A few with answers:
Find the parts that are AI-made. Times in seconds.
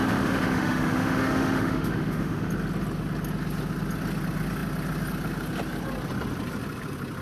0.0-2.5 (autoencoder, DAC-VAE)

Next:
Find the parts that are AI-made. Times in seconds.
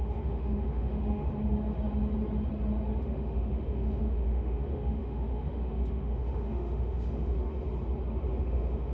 0.0-1.3 (autoencoder, DAC-VAE); 3.0-7.6; 8.4-8.9